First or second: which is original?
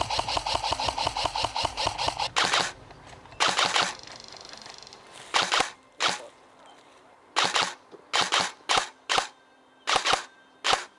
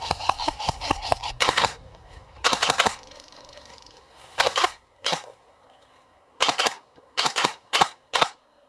first